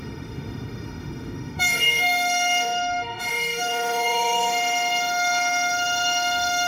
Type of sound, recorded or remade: remade